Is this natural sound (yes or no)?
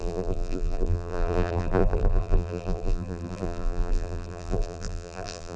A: no